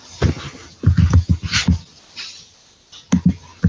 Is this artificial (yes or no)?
no